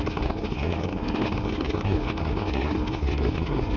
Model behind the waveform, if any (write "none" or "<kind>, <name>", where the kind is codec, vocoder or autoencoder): codec, SNAC